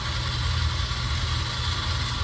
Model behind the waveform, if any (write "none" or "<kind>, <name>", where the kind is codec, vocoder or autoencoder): none